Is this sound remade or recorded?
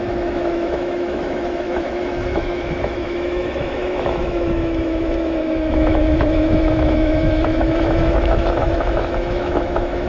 remade